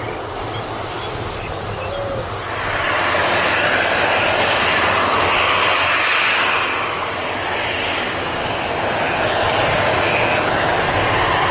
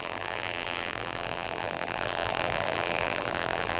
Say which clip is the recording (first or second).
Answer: first